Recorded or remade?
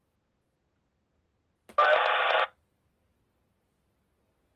recorded